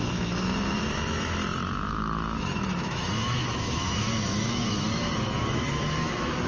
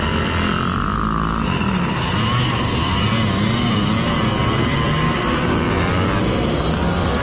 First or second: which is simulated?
first